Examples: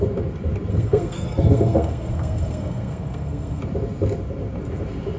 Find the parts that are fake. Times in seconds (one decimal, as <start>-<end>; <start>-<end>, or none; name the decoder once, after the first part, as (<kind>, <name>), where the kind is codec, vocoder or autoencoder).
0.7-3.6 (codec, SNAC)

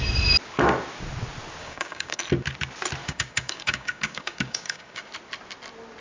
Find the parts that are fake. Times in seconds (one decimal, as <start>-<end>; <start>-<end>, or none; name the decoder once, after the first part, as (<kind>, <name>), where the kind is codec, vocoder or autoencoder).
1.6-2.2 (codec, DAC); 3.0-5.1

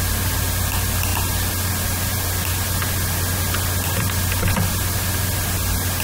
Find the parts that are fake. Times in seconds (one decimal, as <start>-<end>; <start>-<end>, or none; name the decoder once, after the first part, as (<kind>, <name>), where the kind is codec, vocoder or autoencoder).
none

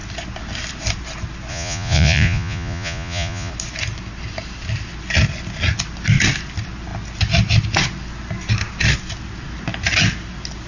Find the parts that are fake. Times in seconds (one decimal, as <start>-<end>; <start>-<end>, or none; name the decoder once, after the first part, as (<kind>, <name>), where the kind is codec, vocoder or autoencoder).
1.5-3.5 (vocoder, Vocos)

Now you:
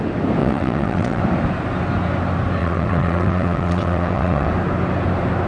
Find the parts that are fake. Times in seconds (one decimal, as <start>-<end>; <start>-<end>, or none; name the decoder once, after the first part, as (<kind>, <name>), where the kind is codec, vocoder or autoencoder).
0.4-1.2 (vocoder, WaveNeXt); 2.6-4.5